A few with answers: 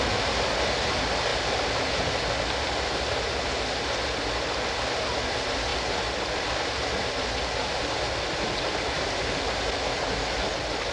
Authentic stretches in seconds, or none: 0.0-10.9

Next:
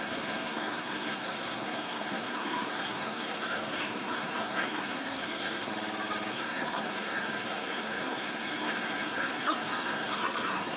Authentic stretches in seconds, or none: 5.7-6.3

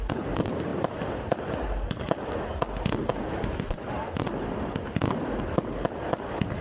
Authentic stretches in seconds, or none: 0.0-6.6

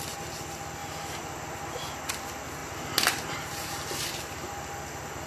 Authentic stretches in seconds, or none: 0.0-2.6; 4.2-5.3

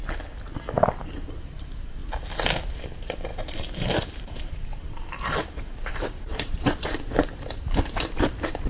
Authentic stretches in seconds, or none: 0.0-0.7; 2.0-2.8

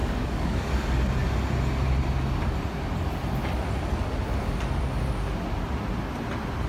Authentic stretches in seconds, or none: 0.7-6.7

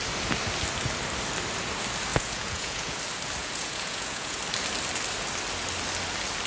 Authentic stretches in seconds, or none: 0.0-2.1; 3.0-3.4; 4.4-6.5

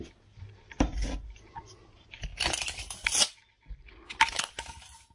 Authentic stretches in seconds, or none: 0.0-5.1